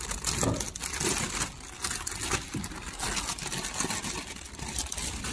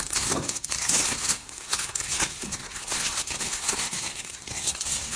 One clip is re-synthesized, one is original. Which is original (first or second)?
first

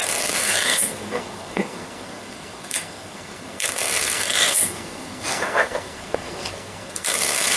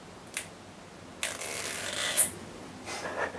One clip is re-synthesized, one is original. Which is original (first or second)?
second